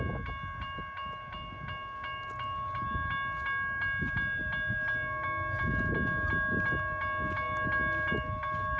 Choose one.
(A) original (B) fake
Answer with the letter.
A